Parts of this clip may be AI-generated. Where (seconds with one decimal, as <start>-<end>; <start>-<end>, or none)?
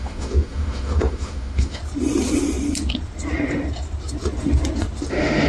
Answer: 0.0-1.8; 5.1-5.5